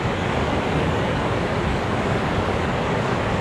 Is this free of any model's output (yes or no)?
no